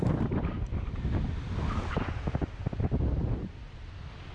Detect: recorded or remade recorded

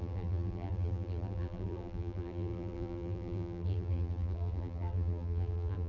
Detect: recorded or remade remade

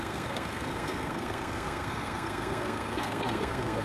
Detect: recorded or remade remade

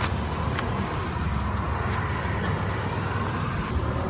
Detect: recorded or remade recorded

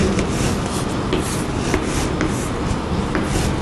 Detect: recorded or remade recorded